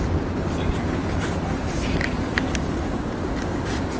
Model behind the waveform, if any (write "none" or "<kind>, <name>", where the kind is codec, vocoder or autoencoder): none